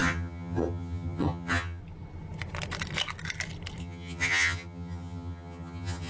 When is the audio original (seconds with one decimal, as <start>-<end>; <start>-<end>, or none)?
1.8-3.8